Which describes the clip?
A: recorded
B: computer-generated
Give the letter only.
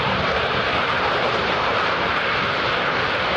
B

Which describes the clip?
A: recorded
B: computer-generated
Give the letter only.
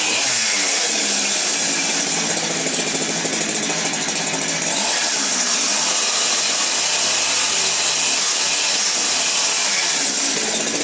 A